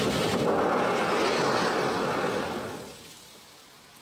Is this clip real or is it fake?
real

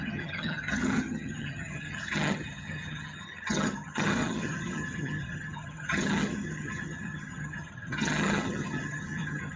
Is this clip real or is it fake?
fake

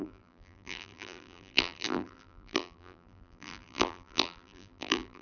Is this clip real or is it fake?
fake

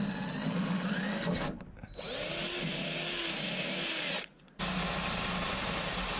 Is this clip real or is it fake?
real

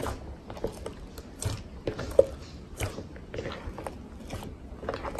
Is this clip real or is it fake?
real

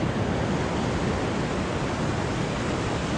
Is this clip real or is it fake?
real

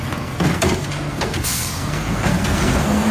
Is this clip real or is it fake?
fake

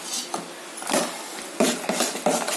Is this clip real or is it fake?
real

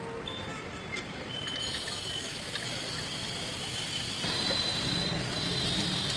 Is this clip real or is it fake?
real